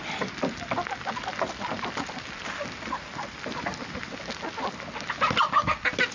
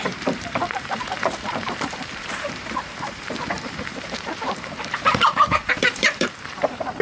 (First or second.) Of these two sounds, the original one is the first